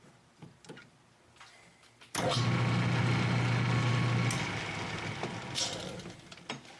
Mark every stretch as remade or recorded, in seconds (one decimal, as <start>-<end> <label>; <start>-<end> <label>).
0.0-6.8 recorded